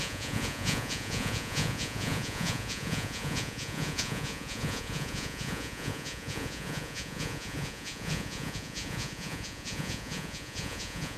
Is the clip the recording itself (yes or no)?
no